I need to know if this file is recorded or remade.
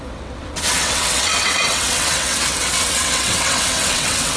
remade